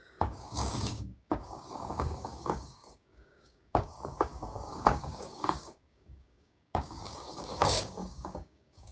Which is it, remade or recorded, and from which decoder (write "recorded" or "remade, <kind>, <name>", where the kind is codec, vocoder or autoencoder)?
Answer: remade, codec, DAC